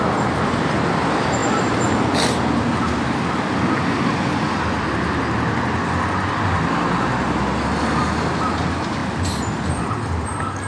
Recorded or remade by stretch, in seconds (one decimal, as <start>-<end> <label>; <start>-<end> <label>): 0.0-10.7 recorded